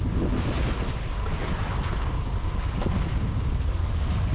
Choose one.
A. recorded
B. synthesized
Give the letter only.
A